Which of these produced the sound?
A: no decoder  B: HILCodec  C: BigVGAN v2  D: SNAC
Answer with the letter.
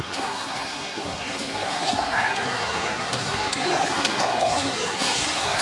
D